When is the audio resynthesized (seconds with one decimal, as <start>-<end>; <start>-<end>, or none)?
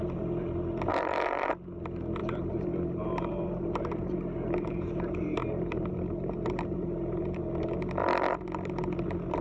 0.9-1.5; 2.2-7.4